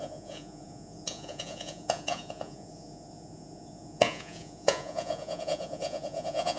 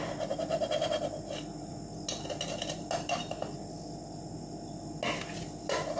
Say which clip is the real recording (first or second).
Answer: second